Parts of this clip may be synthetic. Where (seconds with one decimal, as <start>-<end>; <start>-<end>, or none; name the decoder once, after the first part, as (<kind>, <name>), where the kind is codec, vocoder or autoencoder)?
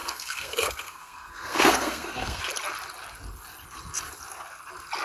0.0-2.4 (codec, SNAC)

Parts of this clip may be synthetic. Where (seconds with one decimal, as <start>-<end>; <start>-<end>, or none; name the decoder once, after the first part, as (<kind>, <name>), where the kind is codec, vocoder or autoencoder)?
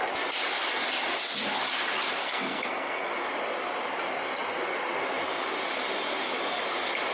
2.2-3.1 (codec, SNAC)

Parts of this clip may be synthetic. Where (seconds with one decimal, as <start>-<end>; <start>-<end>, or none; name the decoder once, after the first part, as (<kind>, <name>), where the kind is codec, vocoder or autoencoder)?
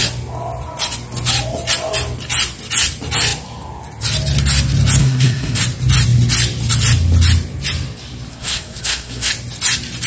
5.0-5.6 (codec, SNAC); 8.3-9.3